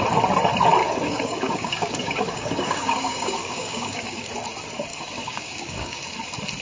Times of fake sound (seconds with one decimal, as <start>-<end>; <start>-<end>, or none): 0.8-4.2; 4.9-6.1